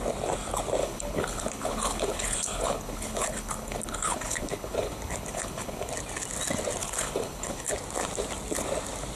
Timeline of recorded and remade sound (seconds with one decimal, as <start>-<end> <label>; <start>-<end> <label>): 0.0-0.8 recorded; 0.8-5.9 remade; 5.9-6.8 recorded; 6.8-7.7 remade; 7.7-9.2 recorded